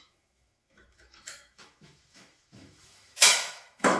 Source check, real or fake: fake